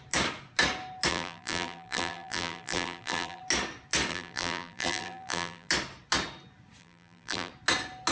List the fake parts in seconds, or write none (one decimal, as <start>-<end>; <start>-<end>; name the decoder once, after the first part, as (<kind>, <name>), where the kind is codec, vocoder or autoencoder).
1.1-3.4 (vocoder, BigVGAN v2); 4.1-5.7; 6.8-7.5